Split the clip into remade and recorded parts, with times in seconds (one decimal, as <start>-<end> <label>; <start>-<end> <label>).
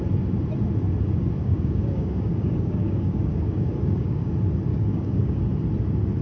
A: 0.0-1.4 recorded; 1.4-4.3 remade; 4.3-4.7 recorded; 4.7-5.4 remade; 5.4-6.2 recorded